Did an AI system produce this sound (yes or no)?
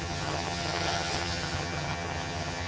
yes